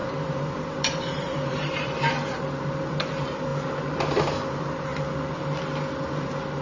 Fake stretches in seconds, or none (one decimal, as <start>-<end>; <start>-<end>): 0.0-2.1